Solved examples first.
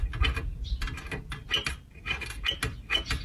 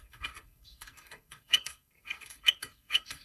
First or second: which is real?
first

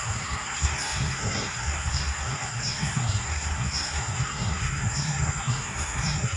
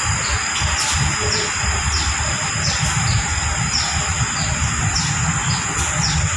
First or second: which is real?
second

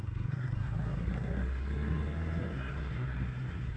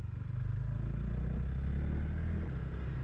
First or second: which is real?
second